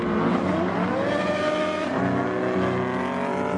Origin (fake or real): real